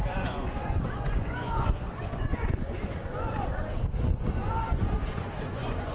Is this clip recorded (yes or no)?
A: no